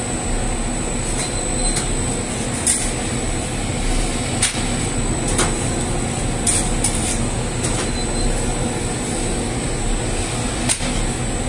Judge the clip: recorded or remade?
recorded